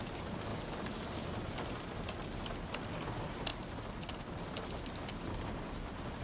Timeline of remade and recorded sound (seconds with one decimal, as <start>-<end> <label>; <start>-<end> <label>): 0.0-6.2 recorded